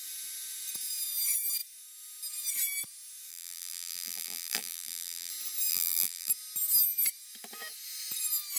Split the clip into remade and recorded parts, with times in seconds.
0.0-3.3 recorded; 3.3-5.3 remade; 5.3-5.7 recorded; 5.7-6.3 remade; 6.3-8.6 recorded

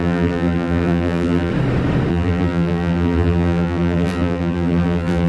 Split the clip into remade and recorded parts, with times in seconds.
0.0-1.5 remade; 1.5-2.1 recorded; 2.1-5.3 remade

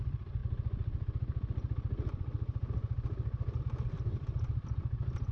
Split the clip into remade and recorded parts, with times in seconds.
0.0-5.3 remade

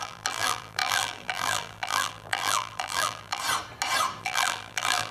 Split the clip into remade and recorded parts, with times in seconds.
0.0-3.4 remade; 3.4-4.2 recorded; 4.2-5.1 remade

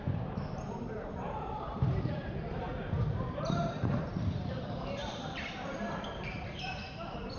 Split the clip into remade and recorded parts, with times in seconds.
0.0-7.4 remade